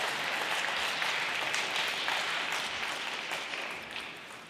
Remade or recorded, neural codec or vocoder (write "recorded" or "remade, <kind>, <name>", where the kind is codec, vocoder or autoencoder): recorded